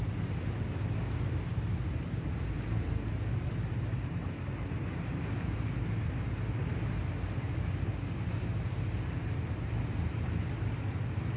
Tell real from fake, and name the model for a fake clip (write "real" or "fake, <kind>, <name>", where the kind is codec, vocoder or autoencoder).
real